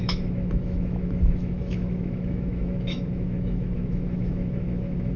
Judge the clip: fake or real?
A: fake